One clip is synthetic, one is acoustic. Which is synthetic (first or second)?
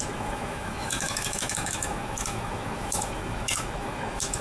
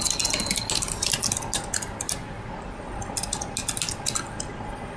first